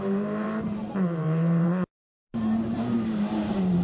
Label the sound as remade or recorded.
remade